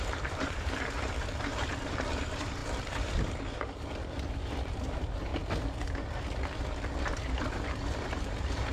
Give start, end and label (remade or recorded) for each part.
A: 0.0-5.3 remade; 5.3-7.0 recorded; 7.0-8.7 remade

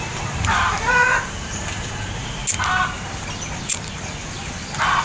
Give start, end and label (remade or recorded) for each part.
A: 0.0-2.4 remade; 2.4-4.0 recorded; 4.0-4.4 remade; 4.4-5.0 recorded

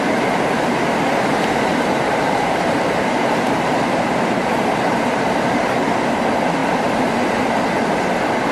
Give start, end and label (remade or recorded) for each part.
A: 0.0-1.7 recorded; 1.7-5.8 remade; 5.8-8.5 recorded

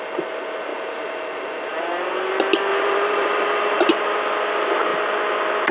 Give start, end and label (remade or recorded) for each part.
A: 0.0-0.7 recorded; 0.7-1.8 remade; 1.8-2.7 recorded; 2.7-3.9 remade; 3.9-5.7 recorded